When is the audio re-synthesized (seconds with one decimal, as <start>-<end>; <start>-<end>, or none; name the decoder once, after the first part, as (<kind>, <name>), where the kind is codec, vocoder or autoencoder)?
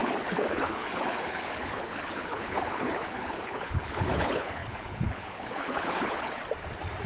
0.0-6.4 (codec, HILCodec)